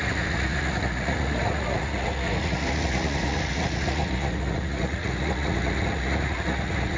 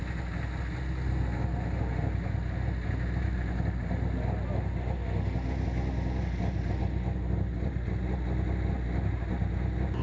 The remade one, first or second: first